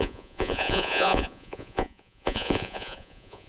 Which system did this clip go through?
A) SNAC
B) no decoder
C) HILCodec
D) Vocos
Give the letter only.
D